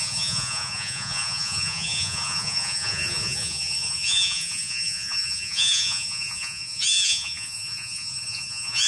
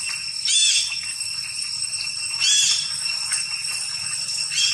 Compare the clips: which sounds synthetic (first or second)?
first